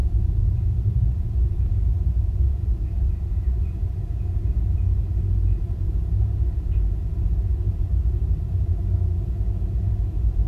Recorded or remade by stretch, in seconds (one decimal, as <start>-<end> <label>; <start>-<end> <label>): 0.0-10.5 remade